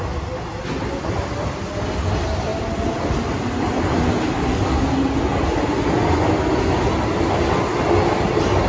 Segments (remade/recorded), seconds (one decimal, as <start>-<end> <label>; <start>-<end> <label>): 0.0-8.7 recorded